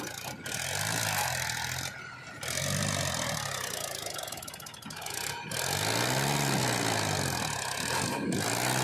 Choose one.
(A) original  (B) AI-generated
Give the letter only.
A